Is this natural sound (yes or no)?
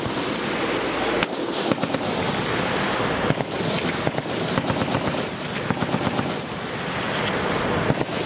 yes